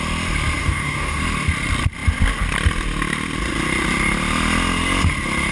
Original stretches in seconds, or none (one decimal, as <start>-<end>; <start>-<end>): 0.0-0.6; 1.2-5.5